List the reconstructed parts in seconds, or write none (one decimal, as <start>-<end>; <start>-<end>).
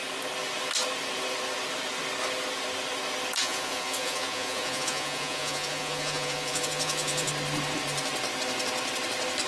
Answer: 3.4-7.3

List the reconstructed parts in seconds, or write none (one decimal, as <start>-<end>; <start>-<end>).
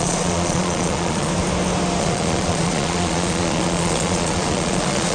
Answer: 0.0-1.3; 2.0-5.1